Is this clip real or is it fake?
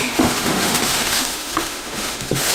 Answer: fake